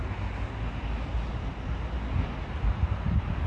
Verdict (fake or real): real